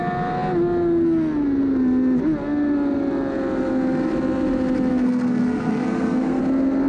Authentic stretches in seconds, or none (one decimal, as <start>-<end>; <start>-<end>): 0.0-4.9; 6.4-6.9